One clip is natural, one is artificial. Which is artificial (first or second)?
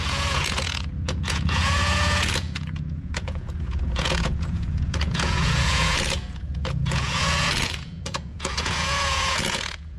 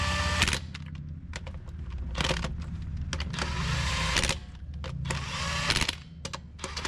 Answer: first